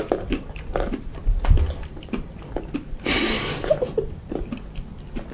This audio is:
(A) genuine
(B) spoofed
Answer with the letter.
A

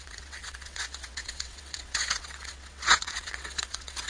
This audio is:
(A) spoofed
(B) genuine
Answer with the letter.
A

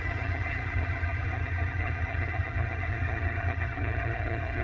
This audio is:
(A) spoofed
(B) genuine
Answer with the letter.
A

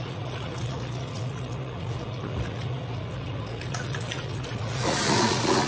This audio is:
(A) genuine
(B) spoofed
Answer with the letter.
B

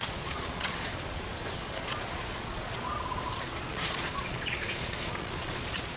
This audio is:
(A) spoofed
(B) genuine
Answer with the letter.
A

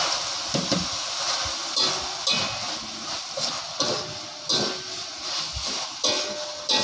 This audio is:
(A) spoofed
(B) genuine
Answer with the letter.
B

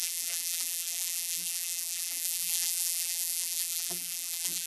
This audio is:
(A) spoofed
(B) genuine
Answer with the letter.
A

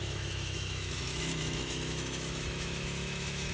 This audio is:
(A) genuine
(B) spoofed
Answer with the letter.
B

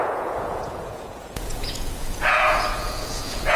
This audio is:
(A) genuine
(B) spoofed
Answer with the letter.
B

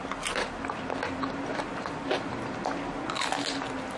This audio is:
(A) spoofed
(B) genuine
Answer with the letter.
B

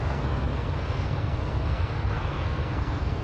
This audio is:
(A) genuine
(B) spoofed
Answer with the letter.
B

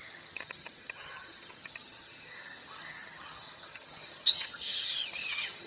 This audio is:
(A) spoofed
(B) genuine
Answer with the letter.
A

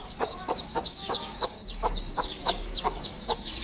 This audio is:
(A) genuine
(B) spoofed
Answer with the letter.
B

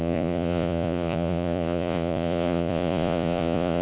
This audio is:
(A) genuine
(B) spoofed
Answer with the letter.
B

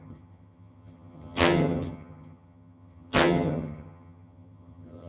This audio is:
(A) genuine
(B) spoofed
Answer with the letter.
B